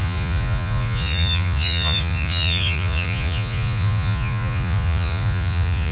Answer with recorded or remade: remade